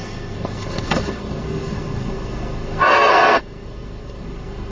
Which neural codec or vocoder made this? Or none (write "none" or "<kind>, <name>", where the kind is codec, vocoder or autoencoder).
codec, SNAC